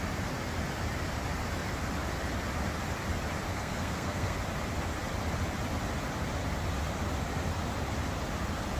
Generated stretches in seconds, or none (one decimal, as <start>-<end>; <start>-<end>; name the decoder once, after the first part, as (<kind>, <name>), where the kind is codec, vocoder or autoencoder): 3.5-4.4 (codec, SNAC)